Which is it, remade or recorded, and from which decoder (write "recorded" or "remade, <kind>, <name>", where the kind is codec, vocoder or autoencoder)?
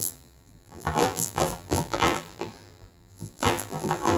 remade, vocoder, BigVGAN v2